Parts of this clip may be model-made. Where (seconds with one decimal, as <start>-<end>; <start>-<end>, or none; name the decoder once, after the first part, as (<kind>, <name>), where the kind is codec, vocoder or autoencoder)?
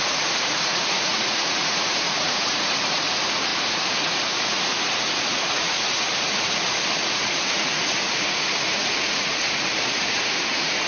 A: 0.0-10.9 (vocoder, Vocos)